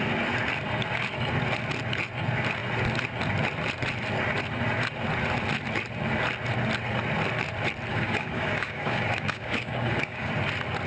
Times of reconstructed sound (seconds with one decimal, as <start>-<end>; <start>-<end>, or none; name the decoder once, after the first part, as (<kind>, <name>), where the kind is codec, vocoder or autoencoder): 7.9-10.3 (codec, DAC)